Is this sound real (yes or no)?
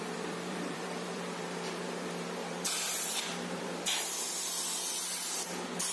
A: no